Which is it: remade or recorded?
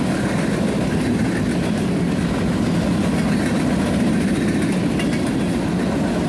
recorded